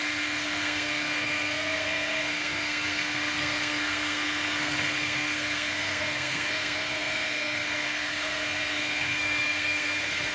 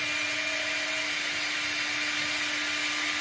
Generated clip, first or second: first